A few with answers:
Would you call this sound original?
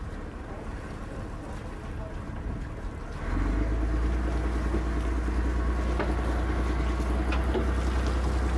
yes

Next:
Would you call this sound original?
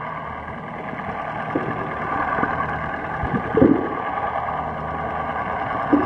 yes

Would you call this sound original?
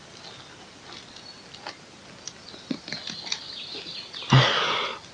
yes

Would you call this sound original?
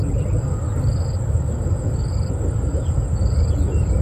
yes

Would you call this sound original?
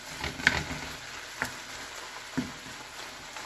yes